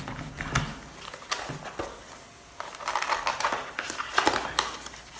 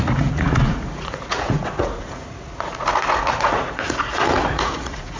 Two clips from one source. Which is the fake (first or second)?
second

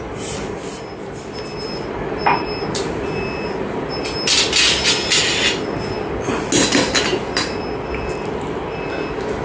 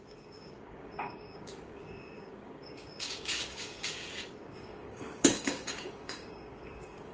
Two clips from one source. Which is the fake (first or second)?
second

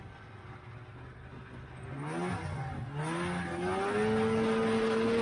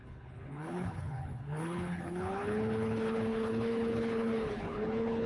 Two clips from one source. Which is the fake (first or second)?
second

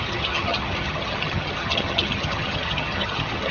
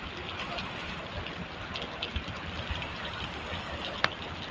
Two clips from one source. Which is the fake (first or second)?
first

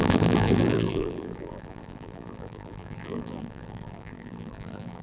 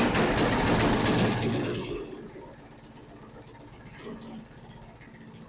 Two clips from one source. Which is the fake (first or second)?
first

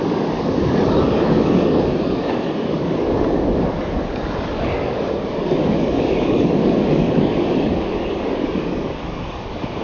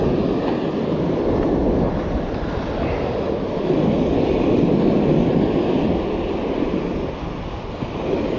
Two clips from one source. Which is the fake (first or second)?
first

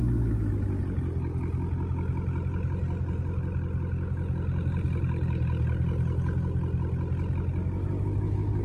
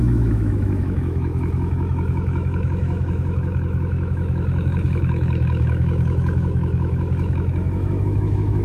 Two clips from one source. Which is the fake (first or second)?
second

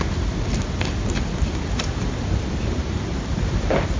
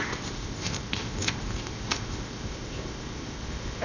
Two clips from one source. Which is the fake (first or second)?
second